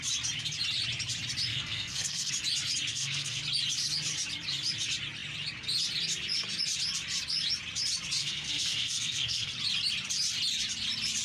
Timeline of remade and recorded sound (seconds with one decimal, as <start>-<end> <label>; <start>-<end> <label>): 0.0-1.5 recorded; 1.5-2.3 remade; 2.3-2.9 recorded; 2.9-3.4 remade; 3.4-8.2 recorded; 8.2-9.5 remade; 9.5-11.2 recorded